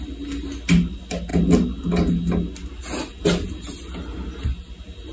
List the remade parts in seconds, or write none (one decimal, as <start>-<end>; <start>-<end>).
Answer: none